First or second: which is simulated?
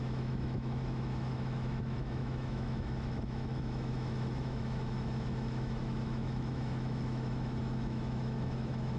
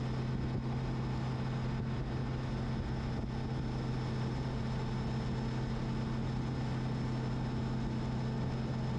first